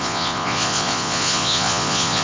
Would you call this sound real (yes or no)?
no